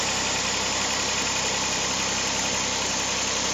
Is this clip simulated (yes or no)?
no